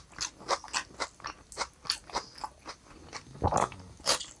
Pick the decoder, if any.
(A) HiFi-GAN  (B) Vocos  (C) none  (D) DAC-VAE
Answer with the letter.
C